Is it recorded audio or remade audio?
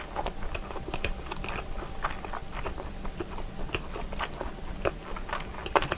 recorded